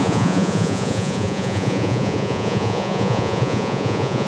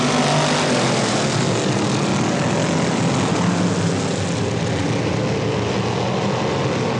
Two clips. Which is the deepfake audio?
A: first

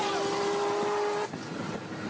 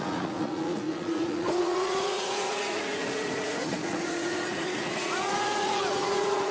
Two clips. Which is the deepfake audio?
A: second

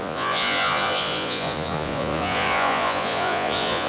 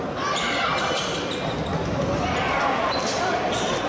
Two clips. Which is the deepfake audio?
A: first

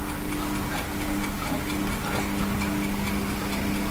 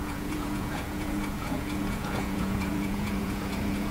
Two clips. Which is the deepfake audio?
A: second